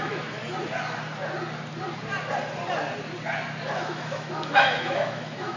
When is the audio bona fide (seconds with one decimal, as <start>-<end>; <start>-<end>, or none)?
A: 0.4-3.8